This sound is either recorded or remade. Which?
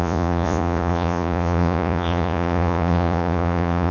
remade